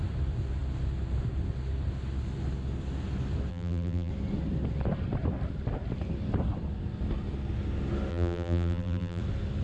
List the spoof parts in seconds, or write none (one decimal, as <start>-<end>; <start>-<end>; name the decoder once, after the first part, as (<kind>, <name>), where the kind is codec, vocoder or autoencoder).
3.5-4.1 (vocoder, BigVGAN v2); 8.1-9.2